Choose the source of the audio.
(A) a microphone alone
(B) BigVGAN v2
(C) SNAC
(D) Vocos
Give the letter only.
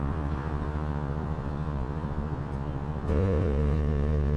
D